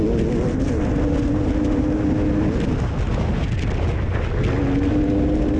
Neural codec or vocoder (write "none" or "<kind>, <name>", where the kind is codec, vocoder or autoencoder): none